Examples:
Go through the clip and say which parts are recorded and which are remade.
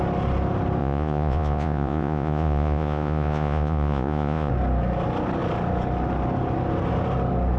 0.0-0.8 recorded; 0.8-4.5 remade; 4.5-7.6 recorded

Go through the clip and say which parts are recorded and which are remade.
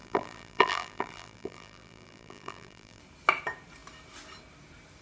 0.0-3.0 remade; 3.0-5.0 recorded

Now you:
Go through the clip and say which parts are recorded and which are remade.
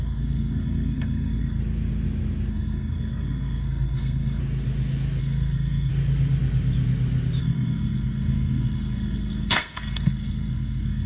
0.0-1.6 remade; 1.6-2.5 recorded; 2.5-4.4 remade; 4.4-5.2 recorded; 5.2-5.9 remade; 5.9-7.4 recorded; 7.4-11.1 remade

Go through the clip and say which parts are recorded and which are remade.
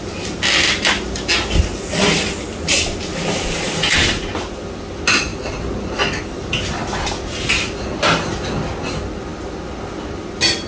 0.0-10.7 recorded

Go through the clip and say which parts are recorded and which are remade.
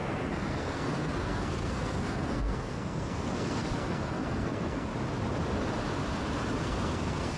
0.0-4.9 remade; 4.9-6.6 recorded; 6.6-7.4 remade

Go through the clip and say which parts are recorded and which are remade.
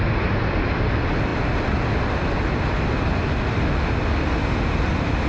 0.0-5.3 recorded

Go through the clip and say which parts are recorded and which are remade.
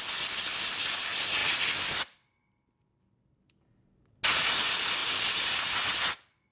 0.0-6.5 recorded